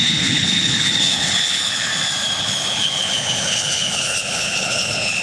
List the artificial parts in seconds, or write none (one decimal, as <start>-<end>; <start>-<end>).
0.0-1.9; 2.4-5.2